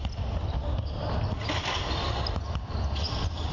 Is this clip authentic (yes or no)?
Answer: yes